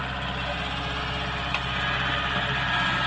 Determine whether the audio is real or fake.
real